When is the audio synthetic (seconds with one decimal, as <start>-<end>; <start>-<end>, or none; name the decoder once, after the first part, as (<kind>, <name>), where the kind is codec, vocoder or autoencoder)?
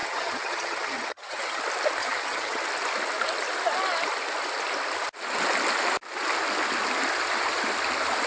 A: 0.0-1.6 (vocoder, HiFi-GAN); 2.0-2.6